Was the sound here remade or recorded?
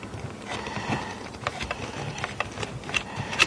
recorded